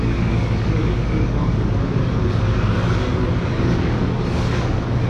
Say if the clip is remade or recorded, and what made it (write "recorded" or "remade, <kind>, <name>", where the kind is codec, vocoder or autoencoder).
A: remade, codec, DAC